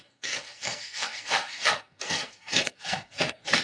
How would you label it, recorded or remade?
remade